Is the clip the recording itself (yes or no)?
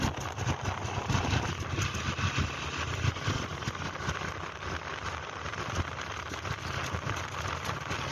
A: yes